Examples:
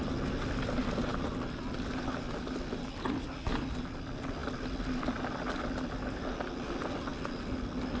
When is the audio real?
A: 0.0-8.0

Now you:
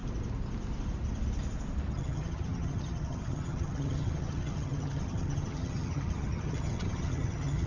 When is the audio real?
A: 0.0-1.9